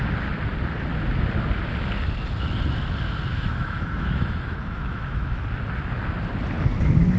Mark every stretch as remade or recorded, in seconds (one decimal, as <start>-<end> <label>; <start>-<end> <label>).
0.0-3.3 recorded; 3.3-5.4 remade; 5.4-7.2 recorded